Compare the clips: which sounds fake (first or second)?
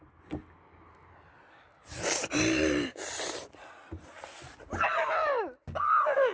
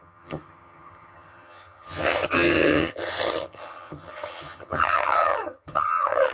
second